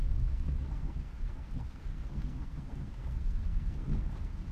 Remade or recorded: remade